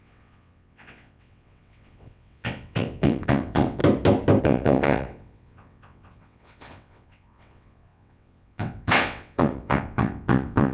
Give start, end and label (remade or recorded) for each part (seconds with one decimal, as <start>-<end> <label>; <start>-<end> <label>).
0.0-3.8 remade; 3.8-4.4 recorded; 4.4-10.7 remade